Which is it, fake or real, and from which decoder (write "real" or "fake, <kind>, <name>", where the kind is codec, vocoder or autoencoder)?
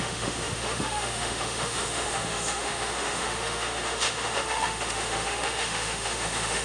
fake, autoencoder, DAC-VAE